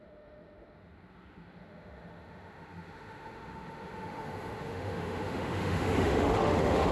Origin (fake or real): fake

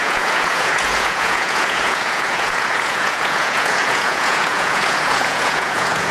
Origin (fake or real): fake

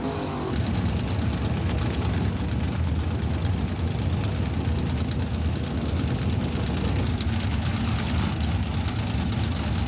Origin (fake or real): real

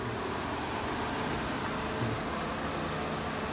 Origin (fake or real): real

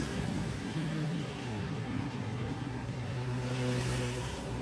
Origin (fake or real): fake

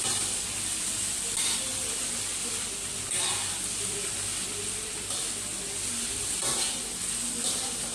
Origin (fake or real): real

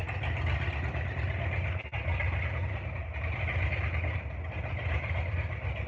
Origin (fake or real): real